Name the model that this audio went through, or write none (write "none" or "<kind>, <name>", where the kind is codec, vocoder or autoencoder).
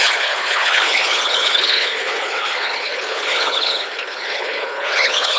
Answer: codec, HILCodec